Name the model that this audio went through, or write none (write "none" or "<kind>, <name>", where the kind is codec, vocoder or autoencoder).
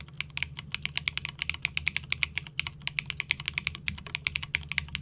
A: none